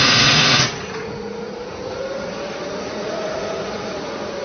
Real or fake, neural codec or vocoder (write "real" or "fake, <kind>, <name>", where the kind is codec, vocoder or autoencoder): fake, vocoder, Vocos